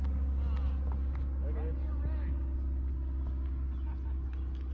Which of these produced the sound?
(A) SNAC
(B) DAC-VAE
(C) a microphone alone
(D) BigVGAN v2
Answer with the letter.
C